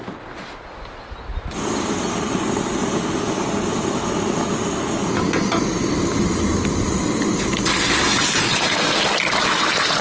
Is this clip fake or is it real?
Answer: real